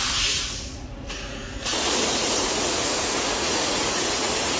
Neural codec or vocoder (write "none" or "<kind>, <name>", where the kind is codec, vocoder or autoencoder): vocoder, Vocos